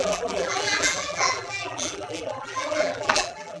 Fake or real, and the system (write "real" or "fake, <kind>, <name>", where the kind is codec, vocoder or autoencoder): fake, vocoder, BigVGAN v2